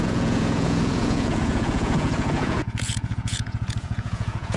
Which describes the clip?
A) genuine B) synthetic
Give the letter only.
B